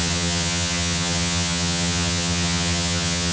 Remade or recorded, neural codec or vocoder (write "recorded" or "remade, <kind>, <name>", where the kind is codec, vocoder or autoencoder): remade, vocoder, HiFi-GAN